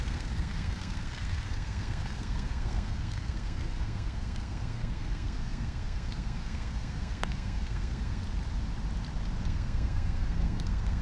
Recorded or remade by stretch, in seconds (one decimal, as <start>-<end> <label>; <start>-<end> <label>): 0.0-8.2 remade; 8.2-9.4 recorded; 9.4-11.0 remade